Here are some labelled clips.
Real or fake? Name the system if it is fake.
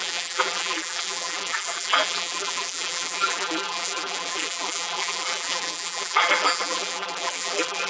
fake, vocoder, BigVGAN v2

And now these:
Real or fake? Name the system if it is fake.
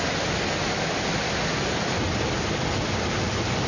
real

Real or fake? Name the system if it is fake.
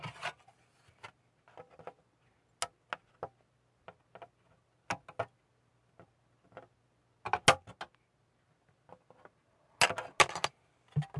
real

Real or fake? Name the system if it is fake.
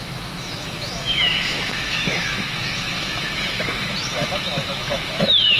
fake, autoencoder, DAC-VAE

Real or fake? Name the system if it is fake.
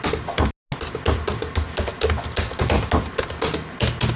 real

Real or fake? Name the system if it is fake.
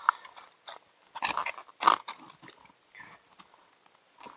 real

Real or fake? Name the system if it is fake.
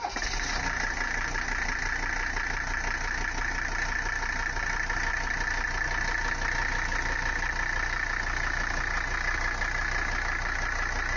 real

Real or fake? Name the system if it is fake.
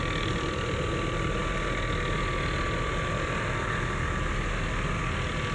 real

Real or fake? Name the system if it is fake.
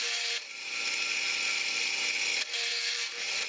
real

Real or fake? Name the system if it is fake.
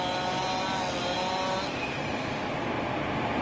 real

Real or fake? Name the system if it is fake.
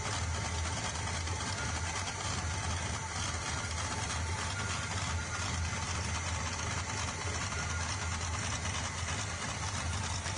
real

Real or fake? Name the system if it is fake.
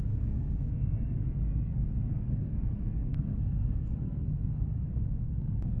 fake, codec, SNAC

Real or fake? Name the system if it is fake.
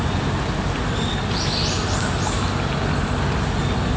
real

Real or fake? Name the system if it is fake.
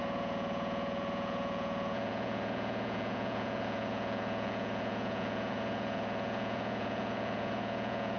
fake, vocoder, Vocos